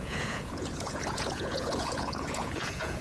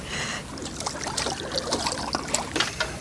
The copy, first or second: first